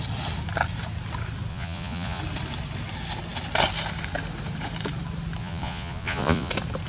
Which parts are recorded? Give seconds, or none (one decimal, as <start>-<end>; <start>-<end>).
0.0-1.5; 2.2-5.4; 6.5-6.9